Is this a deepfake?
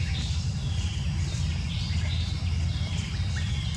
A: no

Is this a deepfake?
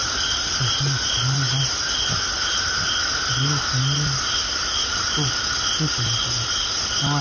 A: no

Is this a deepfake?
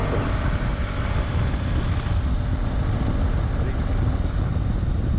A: no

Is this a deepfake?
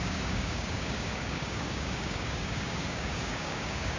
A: yes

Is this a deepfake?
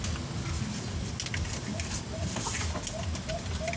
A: no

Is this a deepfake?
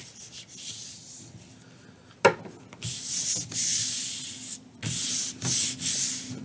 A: no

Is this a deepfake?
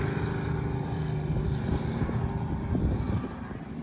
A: yes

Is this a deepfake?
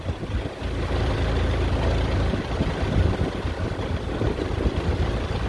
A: yes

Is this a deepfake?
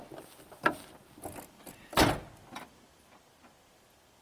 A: no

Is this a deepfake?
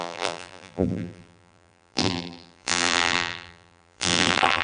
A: yes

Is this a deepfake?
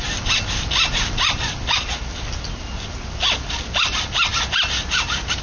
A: no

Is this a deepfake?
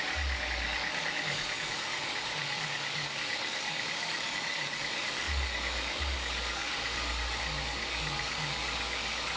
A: yes